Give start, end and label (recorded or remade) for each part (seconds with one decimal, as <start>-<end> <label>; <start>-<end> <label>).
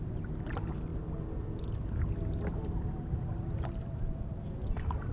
0.0-5.1 recorded